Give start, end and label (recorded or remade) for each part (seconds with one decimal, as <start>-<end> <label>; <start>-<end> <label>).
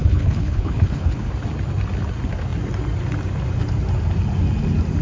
0.0-1.3 remade; 1.3-5.0 recorded